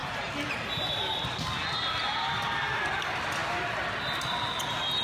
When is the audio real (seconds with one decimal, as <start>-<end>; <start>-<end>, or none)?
0.0-5.0